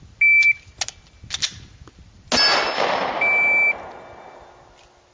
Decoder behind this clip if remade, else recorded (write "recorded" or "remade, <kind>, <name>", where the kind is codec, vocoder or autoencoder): recorded